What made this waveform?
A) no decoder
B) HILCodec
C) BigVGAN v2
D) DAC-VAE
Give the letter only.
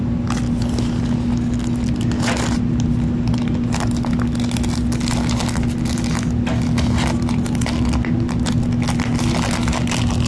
A